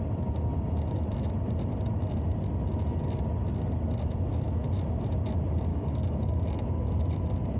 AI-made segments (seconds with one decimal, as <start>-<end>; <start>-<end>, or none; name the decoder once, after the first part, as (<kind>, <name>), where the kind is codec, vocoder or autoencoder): 5.7-6.4 (codec, DAC)